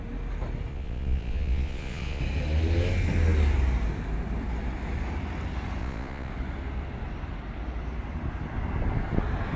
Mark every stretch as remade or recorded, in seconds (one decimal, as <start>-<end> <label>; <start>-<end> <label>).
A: 0.0-0.7 recorded; 0.7-2.2 remade; 2.2-5.8 recorded; 5.8-6.3 remade; 6.3-9.6 recorded